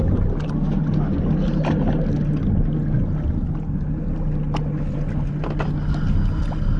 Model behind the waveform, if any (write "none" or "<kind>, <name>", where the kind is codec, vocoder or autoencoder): none